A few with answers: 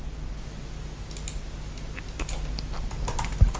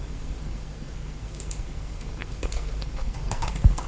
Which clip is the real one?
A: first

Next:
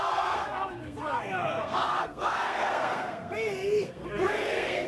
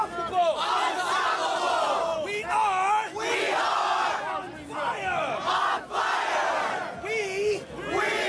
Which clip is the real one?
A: second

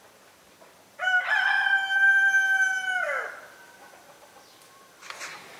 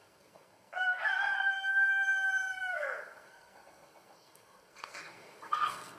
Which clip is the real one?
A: first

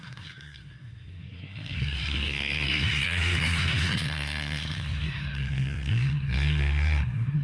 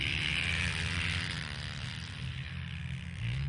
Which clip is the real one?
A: second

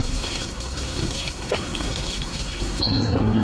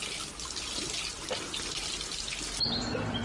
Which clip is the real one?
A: second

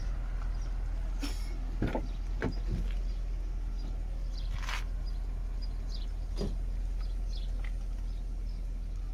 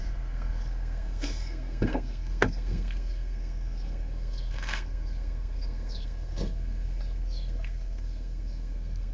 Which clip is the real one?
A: first